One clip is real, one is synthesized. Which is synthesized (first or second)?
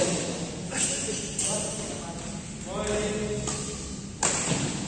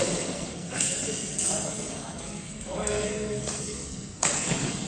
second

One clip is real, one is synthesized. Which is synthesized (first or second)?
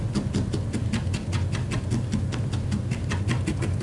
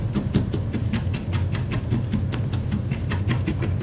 second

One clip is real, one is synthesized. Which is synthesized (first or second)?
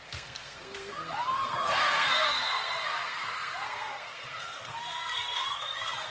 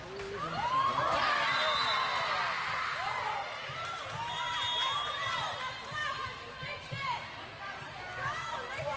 first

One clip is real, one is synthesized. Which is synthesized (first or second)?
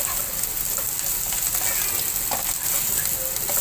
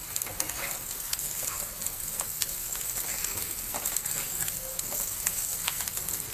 second